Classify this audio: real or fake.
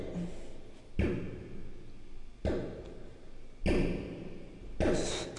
real